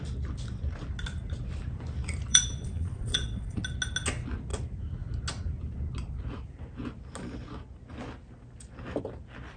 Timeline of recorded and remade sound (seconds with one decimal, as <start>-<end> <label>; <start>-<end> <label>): 0.0-2.3 recorded; 2.3-3.6 remade; 3.6-9.6 recorded